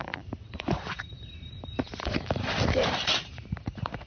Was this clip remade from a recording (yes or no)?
yes